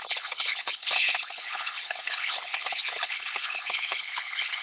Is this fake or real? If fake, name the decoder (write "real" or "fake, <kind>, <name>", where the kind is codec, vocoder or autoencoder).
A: fake, codec, HILCodec